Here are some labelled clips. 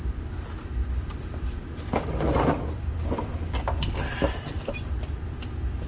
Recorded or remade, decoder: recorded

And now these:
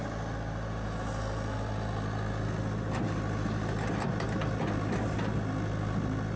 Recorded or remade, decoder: recorded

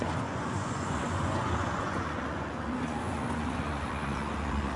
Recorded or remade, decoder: remade, vocoder, Vocos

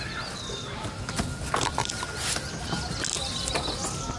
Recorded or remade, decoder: recorded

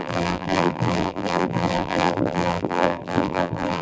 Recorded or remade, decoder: remade, vocoder, BigVGAN v2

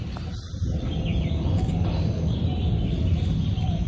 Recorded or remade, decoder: recorded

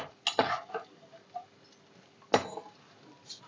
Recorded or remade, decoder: recorded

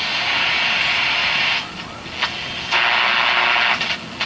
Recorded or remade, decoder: recorded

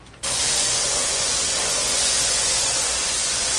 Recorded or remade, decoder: remade, vocoder, Vocos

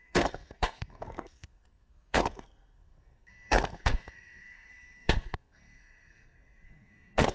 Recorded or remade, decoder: remade, codec, SNAC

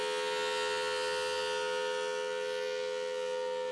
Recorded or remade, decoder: recorded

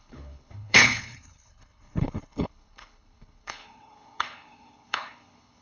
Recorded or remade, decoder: remade, codec, HILCodec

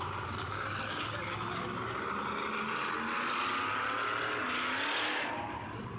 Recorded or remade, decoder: recorded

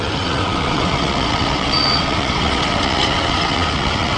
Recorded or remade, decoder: remade, vocoder, WaveNeXt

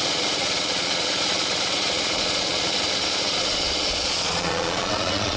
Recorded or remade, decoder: remade, vocoder, Vocos